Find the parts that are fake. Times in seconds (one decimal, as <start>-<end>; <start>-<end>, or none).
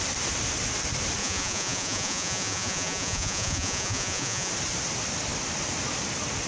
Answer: 1.2-4.5